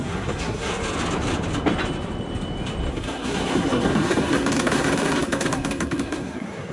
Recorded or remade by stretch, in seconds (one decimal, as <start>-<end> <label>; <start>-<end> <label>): 0.0-0.7 remade; 0.7-2.9 recorded; 2.9-6.7 remade